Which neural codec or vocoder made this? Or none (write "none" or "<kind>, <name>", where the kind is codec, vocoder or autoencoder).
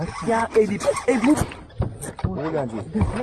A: none